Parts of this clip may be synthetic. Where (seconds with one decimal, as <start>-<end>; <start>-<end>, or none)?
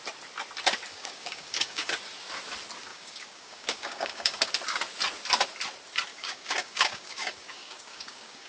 0.9-2.0; 2.9-4.5; 6.1-8.5